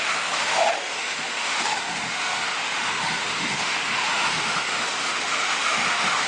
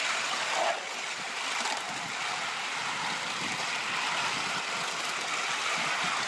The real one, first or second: second